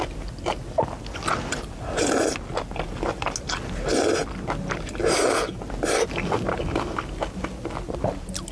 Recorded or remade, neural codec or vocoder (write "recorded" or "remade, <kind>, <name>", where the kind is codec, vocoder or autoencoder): recorded